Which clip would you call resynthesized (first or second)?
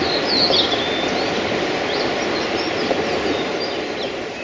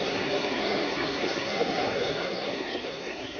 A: second